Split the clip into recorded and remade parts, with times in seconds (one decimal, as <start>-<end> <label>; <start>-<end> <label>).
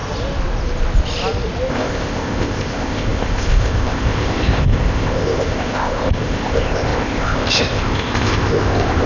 0.0-1.7 recorded; 1.7-9.1 remade